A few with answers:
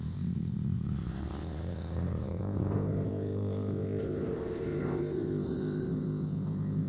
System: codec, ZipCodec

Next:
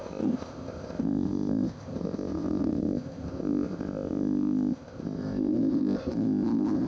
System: codec, ZipCodec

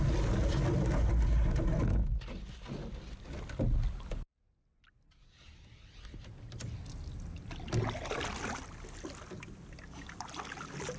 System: none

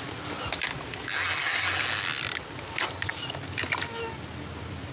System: none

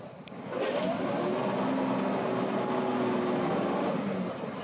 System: none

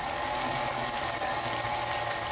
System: none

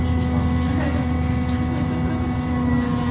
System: none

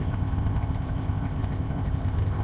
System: codec, ZipCodec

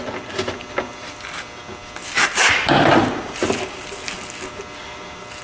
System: none